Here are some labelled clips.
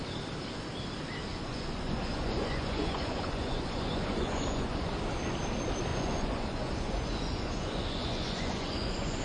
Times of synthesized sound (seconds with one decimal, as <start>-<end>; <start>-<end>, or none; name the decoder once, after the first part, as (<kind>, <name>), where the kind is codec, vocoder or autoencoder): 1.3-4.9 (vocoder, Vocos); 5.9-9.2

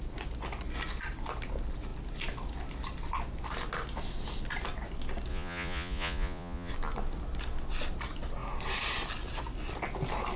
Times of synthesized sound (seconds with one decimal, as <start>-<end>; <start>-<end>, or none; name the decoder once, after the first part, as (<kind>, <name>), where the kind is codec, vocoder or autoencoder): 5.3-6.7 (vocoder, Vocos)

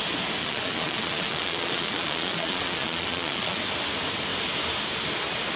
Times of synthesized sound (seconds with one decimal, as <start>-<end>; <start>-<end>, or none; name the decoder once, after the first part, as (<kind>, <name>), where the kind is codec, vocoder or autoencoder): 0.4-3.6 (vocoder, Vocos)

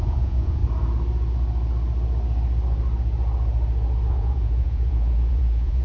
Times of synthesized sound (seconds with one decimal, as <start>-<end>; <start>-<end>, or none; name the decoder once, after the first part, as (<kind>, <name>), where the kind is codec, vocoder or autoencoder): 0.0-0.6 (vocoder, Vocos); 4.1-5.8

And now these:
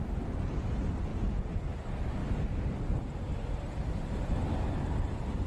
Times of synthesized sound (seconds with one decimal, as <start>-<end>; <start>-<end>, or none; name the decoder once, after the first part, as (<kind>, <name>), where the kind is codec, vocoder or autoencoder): 1.1-1.7 (vocoder, Vocos)

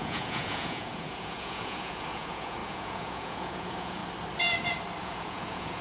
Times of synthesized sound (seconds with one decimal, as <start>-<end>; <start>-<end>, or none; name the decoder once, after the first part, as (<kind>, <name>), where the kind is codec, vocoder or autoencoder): 0.0-4.0 (vocoder, Vocos); 5.0-5.8

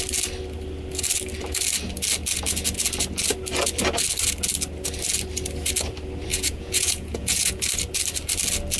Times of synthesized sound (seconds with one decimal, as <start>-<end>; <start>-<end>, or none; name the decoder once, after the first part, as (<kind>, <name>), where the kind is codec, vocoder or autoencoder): 6.3-7.6 (vocoder, Vocos)

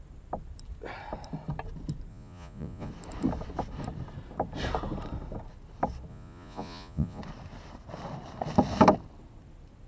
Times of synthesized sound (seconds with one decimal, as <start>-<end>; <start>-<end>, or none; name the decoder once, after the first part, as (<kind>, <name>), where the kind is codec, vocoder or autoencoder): 2.1-2.9 (vocoder, Vocos); 6.1-7.2